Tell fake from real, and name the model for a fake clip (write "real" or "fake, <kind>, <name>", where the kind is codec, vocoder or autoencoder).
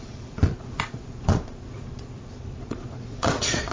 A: fake, vocoder, Vocos